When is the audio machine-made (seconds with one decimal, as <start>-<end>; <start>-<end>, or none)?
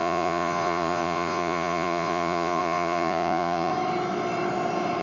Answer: 0.0-3.7